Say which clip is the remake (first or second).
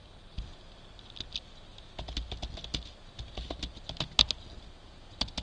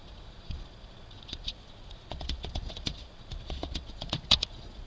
second